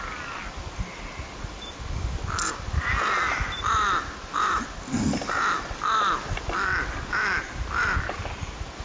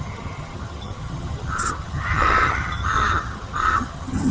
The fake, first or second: second